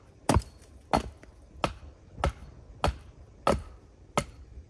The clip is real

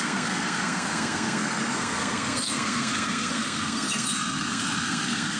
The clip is fake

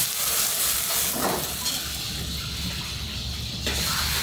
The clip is real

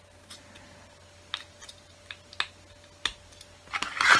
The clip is real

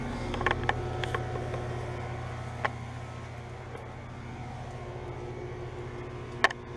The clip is real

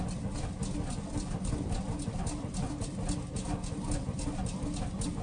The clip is real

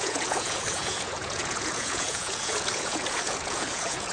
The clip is fake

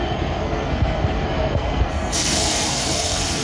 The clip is fake